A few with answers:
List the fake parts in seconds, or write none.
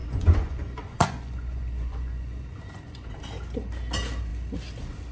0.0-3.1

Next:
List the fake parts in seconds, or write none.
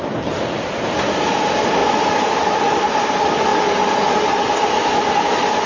none